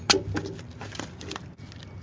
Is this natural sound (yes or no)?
yes